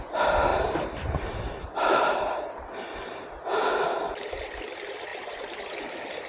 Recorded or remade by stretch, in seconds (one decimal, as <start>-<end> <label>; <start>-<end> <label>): 0.0-0.5 recorded; 0.5-4.3 remade; 4.3-5.1 recorded; 5.1-5.6 remade; 5.6-6.3 recorded